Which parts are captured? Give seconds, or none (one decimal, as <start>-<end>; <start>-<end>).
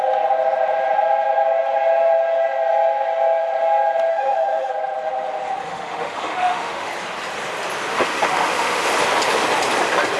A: 0.0-4.1; 4.7-5.6; 6.9-7.9; 8.9-10.2